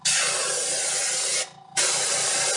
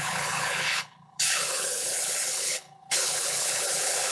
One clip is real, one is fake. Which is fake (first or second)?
second